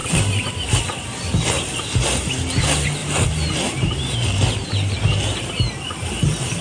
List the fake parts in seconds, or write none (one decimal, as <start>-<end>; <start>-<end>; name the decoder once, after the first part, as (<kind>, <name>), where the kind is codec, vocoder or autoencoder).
none